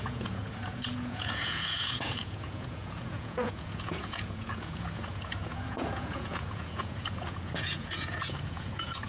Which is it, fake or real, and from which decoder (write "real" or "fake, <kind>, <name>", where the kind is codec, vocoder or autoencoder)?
fake, vocoder, Vocos